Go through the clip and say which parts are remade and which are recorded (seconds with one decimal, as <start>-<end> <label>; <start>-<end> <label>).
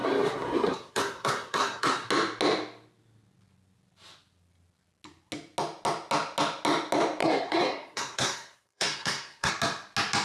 0.0-2.1 remade; 2.1-7.2 recorded; 7.2-9.5 remade; 9.5-10.2 recorded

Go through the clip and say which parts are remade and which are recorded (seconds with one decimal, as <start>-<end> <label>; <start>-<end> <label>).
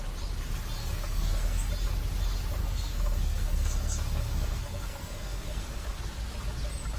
0.0-0.8 recorded; 0.8-1.7 remade; 1.7-2.6 recorded; 2.6-6.0 remade; 6.0-7.0 recorded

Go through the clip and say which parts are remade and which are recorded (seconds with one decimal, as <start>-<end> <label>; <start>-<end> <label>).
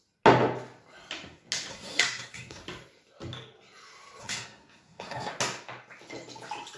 0.0-1.7 recorded; 1.7-2.6 remade; 2.6-4.2 recorded; 4.2-5.3 remade; 5.3-6.8 recorded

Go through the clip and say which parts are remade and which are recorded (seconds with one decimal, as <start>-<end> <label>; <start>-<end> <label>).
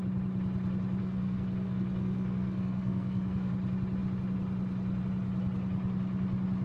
0.0-1.0 recorded; 1.0-3.5 remade; 3.5-6.6 recorded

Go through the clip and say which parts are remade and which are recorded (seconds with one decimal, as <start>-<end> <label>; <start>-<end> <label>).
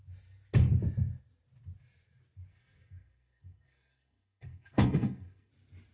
0.0-2.5 recorded; 2.5-5.5 remade; 5.5-5.9 recorded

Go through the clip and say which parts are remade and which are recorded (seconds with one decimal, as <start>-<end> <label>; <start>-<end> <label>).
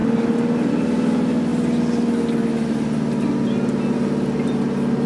0.0-5.1 recorded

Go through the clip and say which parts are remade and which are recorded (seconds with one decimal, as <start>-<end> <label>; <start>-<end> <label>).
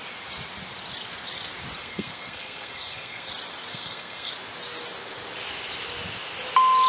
0.0-1.8 recorded; 1.8-3.3 remade; 3.3-3.7 recorded; 3.7-4.3 remade; 4.3-6.9 recorded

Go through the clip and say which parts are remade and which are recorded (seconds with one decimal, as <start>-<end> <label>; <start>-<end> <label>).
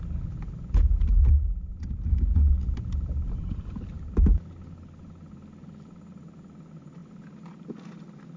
0.0-8.4 recorded